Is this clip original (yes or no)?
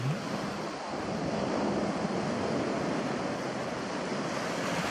yes